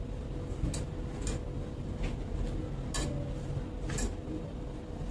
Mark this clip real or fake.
real